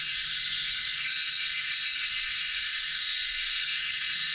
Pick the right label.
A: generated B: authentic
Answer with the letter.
A